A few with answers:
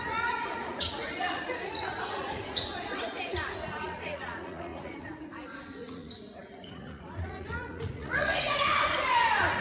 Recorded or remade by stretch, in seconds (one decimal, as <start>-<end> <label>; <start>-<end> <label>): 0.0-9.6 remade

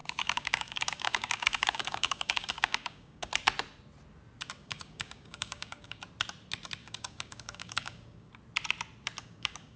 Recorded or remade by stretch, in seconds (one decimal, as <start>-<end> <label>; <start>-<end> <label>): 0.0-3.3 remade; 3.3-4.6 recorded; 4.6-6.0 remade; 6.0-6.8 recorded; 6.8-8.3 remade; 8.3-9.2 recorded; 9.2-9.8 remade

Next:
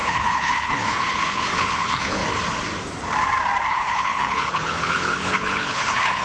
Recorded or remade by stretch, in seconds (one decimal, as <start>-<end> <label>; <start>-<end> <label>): 0.0-2.2 remade; 2.2-3.7 recorded; 3.7-6.2 remade

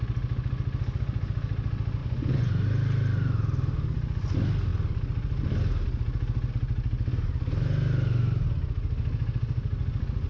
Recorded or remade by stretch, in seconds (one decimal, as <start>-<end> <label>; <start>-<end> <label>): 0.0-2.0 recorded; 2.0-2.5 remade; 2.5-10.3 recorded